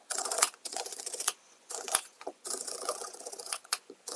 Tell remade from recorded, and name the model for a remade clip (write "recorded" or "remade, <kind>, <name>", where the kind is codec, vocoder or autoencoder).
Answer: remade, vocoder, Vocos